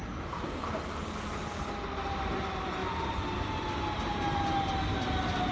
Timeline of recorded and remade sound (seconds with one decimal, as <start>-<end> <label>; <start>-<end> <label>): 0.0-5.5 recorded